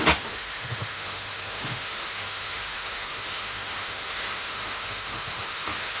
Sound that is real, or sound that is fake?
fake